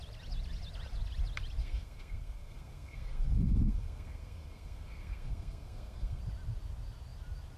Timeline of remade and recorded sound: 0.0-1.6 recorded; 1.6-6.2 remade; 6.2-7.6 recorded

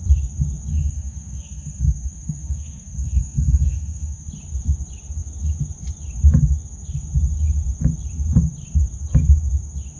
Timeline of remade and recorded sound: 0.0-0.7 recorded; 0.7-4.3 remade; 4.3-10.0 recorded